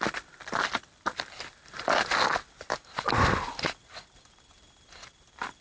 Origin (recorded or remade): recorded